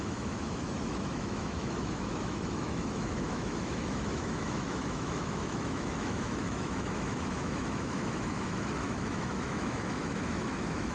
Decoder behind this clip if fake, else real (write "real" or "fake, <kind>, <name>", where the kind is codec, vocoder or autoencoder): fake, autoencoder, DAC-VAE